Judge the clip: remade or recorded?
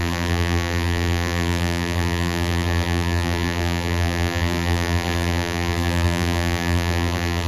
remade